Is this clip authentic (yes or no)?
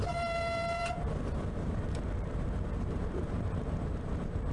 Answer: no